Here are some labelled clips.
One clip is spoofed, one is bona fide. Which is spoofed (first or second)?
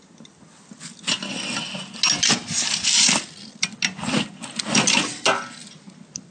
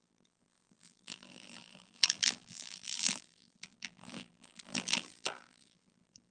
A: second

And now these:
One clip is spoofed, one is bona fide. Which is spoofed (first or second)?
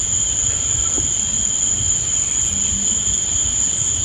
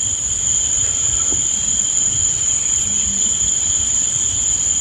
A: second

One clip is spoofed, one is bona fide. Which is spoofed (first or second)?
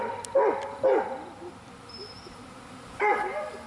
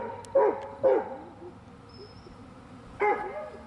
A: first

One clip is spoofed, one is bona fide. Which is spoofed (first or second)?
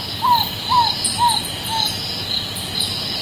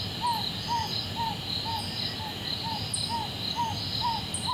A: first